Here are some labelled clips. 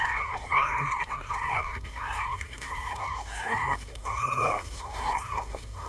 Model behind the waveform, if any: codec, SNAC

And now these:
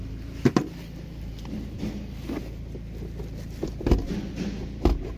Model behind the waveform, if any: none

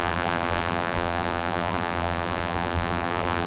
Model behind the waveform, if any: vocoder, BigVGAN v2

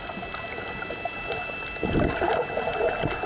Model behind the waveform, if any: none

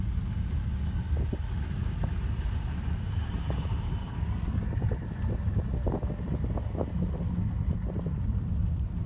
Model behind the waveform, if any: none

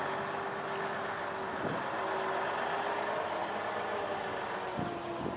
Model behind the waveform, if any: none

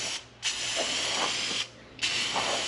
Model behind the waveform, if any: none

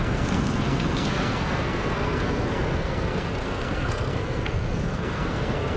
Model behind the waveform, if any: codec, SNAC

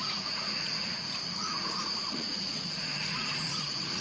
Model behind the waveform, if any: vocoder, Vocos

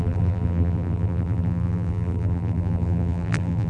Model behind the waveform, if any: vocoder, BigVGAN v2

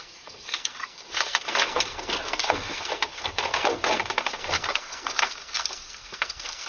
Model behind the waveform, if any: codec, SNAC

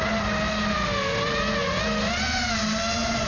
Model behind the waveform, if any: none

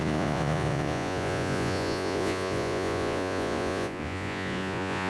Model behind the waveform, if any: vocoder, Vocos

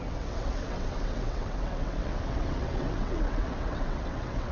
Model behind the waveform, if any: vocoder, WaveNeXt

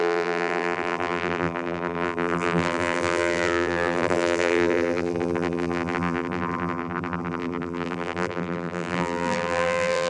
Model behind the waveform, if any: vocoder, BigVGAN v2